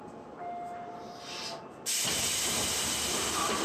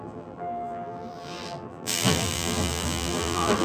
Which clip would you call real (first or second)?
first